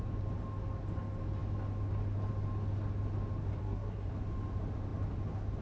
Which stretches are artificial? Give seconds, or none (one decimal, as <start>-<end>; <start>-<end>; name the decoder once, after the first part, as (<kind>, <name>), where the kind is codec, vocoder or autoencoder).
3.6-4.1 (codec, SNAC)